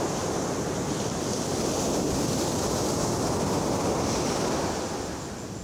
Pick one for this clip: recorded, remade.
recorded